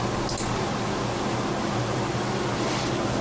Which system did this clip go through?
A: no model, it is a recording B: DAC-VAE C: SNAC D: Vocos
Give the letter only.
A